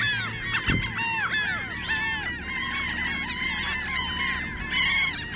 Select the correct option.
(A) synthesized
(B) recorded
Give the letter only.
B